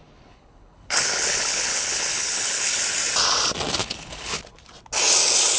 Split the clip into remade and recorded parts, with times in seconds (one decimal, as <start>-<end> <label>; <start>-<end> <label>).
0.0-2.8 remade; 2.8-3.8 recorded; 3.8-4.4 remade; 4.4-5.6 recorded